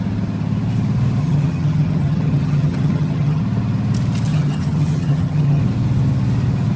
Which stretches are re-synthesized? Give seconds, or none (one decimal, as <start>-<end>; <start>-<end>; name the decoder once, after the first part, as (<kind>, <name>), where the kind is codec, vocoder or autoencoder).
1.2-3.4 (vocoder, HiFi-GAN); 4.3-5.6

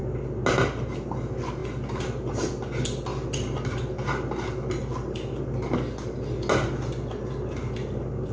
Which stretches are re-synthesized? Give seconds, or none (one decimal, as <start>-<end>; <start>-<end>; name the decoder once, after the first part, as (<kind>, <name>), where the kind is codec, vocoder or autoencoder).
none

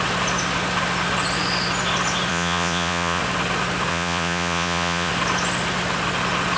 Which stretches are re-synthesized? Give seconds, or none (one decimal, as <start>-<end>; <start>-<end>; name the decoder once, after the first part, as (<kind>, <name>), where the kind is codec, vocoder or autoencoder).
2.3-3.2 (vocoder, Vocos); 3.9-5.1

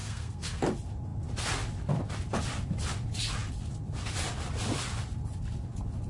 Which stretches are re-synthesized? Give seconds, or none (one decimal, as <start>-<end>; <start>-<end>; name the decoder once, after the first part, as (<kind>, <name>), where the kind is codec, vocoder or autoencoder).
0.0-0.6 (codec, SNAC)

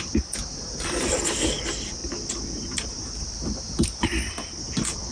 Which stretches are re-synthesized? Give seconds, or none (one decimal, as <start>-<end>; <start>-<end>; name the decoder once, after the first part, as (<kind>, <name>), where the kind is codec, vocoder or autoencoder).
0.4-1.6 (vocoder, BigVGAN v2); 2.0-4.3